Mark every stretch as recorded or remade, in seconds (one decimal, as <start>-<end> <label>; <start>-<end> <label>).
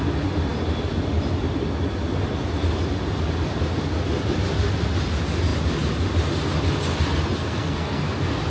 0.0-7.4 recorded; 7.4-8.1 remade; 8.1-8.5 recorded